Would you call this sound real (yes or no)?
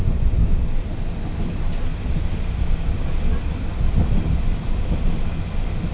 yes